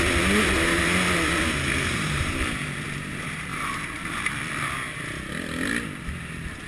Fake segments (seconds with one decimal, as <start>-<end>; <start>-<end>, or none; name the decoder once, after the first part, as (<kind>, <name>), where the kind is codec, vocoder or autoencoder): 3.5-4.3 (vocoder, BigVGAN v2)